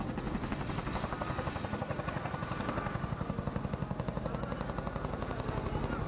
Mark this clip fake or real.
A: real